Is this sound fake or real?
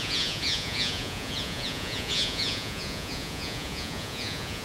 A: fake